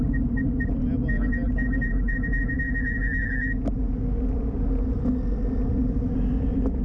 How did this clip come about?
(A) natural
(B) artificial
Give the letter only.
A